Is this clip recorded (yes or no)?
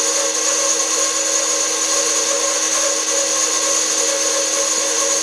yes